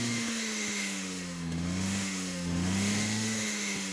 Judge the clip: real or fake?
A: fake